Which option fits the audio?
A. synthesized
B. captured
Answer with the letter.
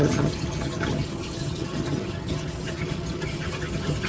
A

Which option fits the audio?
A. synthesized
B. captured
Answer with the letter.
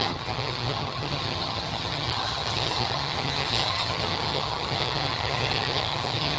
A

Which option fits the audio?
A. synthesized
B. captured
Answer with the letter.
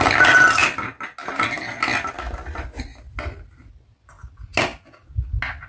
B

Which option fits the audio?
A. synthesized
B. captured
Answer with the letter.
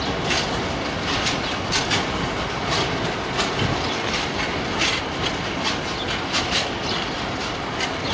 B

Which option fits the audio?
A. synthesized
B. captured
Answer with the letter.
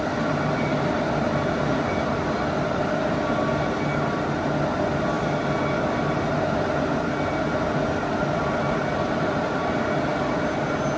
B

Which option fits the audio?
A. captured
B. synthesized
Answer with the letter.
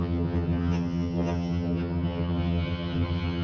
B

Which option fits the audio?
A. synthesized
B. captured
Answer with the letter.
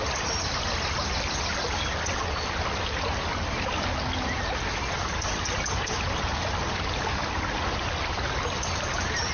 B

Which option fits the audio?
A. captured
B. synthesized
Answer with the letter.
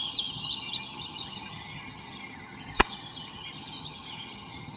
B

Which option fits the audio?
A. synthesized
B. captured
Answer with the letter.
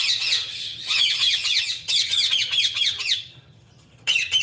A